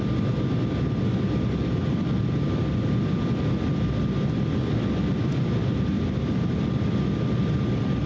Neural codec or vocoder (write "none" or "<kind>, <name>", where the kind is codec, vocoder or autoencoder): none